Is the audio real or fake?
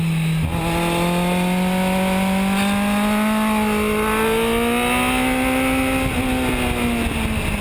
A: real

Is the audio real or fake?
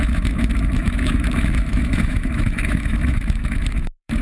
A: fake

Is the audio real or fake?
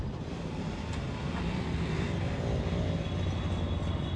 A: real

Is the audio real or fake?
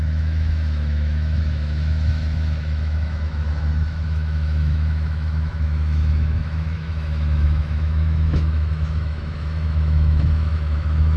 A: fake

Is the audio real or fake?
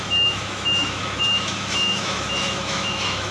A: fake